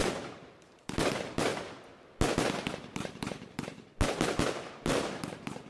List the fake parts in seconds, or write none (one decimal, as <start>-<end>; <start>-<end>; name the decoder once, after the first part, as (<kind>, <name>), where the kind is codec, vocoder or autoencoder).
0.0-1.5 (vocoder, BigVGAN v2); 2.7-3.9; 4.8-5.7